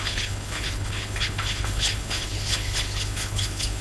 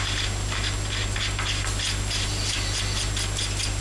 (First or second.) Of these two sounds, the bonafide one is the second